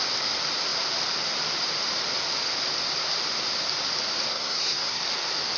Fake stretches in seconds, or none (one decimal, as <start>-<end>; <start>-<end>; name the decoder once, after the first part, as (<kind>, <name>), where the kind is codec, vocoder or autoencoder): 4.3-5.0 (codec, SNAC)